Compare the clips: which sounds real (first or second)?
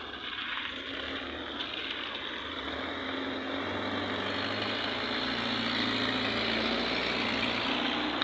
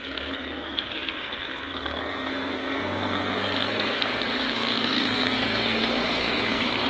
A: first